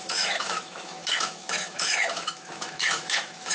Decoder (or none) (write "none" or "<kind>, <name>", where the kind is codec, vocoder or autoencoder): autoencoder, DAC-VAE